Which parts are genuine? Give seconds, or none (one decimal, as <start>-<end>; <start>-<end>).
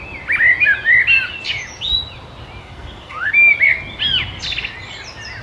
0.0-2.6; 3.3-5.4